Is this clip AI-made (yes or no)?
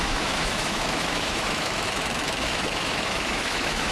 yes